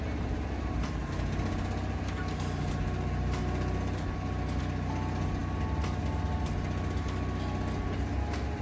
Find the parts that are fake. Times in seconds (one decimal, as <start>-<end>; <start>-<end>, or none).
none